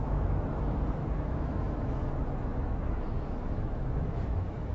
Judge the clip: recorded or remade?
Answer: remade